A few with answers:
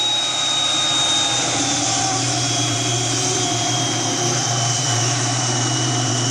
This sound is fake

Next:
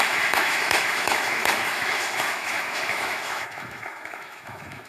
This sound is fake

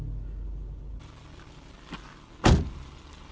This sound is real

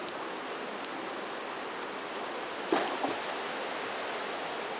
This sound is real